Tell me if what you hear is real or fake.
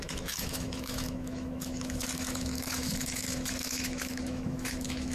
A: fake